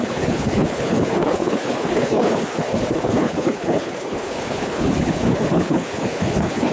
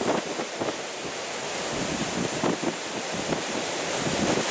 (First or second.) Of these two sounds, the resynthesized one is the first